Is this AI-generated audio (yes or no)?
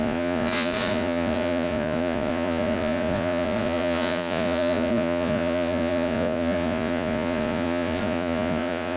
yes